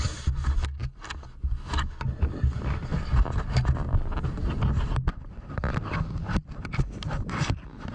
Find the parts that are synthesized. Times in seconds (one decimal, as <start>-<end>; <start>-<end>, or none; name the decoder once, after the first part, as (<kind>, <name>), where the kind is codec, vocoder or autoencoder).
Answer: none